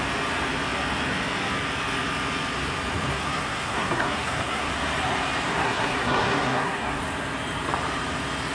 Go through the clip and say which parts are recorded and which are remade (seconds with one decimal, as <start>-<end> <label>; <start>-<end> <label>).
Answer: 0.0-3.1 recorded; 3.1-4.7 remade; 4.7-5.5 recorded; 5.5-7.0 remade; 7.0-8.5 recorded